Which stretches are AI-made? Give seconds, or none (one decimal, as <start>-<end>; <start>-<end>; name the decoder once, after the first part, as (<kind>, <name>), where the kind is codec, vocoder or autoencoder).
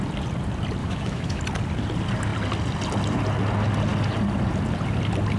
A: 0.8-1.4 (autoencoder, DAC-VAE)